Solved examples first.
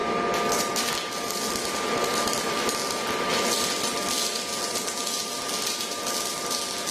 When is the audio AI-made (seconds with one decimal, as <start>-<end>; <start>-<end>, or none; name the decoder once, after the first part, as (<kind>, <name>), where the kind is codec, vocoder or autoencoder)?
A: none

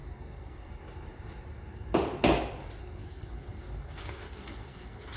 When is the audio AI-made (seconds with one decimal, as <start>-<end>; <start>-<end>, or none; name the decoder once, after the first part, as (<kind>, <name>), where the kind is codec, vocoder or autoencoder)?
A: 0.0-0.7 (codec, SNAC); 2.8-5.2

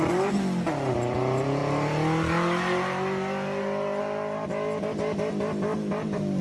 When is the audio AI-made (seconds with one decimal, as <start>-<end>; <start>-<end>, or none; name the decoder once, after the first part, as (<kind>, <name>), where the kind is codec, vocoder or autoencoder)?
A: none

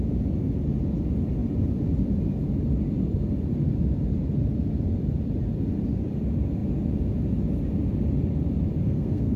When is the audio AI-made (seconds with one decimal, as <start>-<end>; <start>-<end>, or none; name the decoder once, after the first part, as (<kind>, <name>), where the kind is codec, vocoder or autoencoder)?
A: 8.8-9.4 (codec, SNAC)

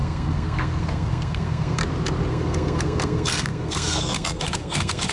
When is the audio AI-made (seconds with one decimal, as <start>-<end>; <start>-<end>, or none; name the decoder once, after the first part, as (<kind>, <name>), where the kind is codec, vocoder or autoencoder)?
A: 0.0-1.8 (codec, SNAC); 2.3-5.1